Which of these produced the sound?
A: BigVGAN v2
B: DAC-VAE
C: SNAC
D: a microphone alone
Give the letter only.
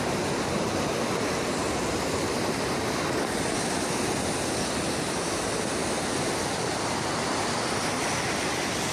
D